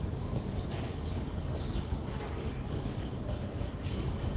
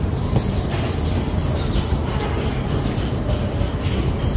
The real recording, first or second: second